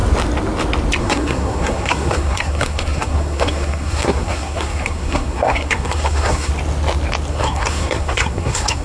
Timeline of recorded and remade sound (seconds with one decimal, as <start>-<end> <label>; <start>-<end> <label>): 0.0-1.0 recorded; 1.0-6.5 remade; 6.5-7.3 recorded; 7.3-8.8 remade